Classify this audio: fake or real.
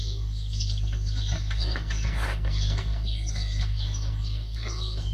fake